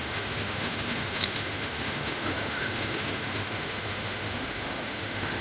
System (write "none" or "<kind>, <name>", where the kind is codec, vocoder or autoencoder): autoencoder, DAC-VAE